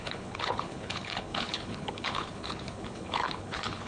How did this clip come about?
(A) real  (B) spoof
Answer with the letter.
B